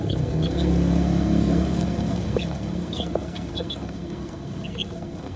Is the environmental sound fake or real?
fake